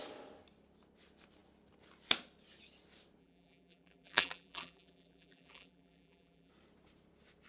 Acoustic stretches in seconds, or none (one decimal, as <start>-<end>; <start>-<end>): 0.0-3.2; 6.5-7.5